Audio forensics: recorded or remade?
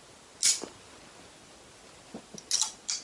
recorded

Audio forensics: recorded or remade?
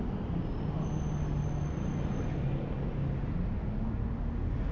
recorded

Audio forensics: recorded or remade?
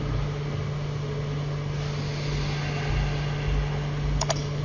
recorded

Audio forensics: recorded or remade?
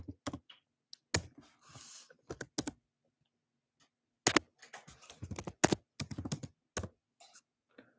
recorded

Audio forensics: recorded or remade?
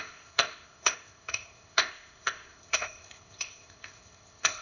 remade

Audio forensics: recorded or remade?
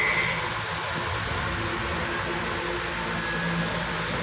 recorded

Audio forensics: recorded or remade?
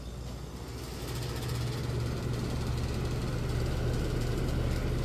recorded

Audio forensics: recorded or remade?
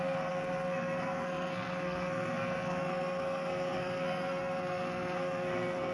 remade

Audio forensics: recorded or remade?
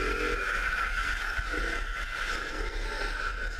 remade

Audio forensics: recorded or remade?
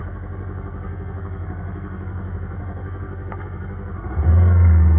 remade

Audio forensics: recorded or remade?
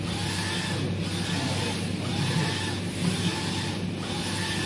recorded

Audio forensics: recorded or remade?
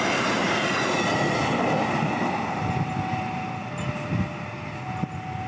recorded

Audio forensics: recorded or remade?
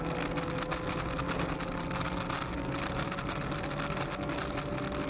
recorded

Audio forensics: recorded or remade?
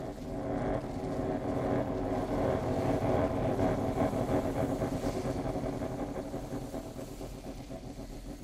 recorded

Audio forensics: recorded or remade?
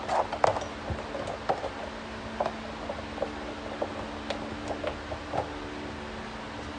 recorded